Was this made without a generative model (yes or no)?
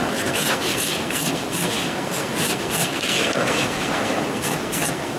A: no